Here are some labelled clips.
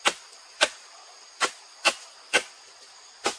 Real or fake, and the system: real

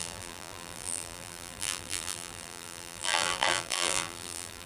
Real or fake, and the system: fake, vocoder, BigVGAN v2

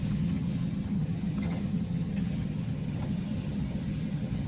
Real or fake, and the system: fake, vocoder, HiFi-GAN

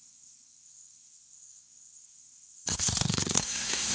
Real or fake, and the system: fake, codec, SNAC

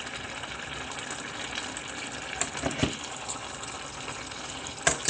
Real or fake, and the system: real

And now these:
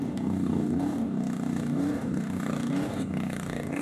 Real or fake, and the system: fake, codec, DAC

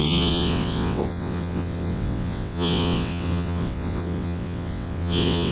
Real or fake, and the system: fake, vocoder, WaveNeXt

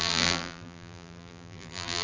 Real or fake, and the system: fake, vocoder, BigVGAN v2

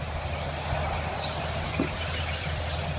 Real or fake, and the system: real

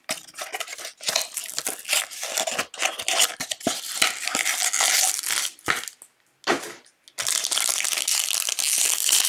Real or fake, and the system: real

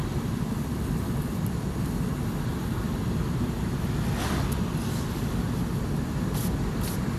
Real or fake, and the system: real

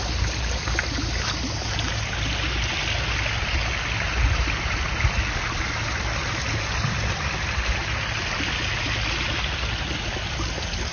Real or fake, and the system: real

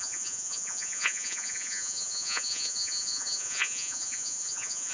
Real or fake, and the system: fake, vocoder, Vocos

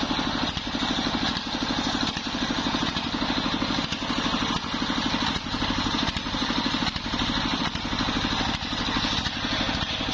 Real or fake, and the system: real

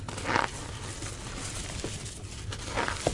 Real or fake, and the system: real